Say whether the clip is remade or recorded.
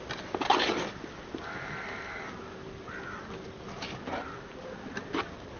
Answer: recorded